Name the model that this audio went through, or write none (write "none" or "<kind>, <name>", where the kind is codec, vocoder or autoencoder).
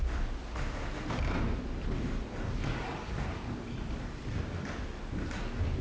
none